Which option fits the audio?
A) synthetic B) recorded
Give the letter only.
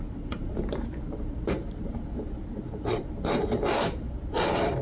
A